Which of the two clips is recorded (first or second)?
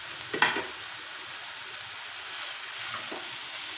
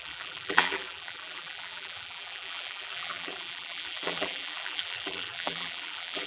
first